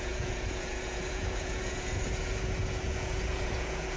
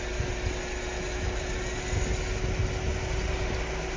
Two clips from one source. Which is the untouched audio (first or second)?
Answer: second